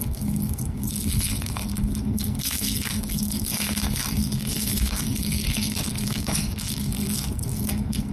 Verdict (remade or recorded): remade